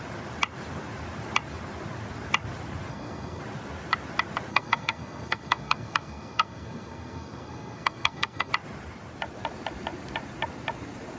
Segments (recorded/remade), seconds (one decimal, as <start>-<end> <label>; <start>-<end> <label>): 0.0-2.9 recorded; 2.9-3.4 remade; 3.4-4.5 recorded; 4.5-8.5 remade; 8.5-11.2 recorded